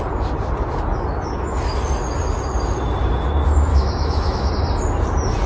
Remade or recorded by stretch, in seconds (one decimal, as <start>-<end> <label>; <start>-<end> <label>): 0.0-3.7 recorded; 3.7-4.5 remade; 4.5-5.5 recorded